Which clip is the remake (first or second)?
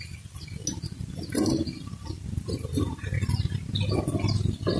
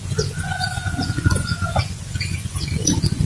second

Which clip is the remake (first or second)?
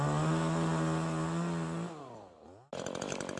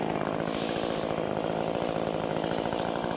second